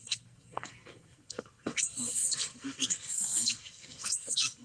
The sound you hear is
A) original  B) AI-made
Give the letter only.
B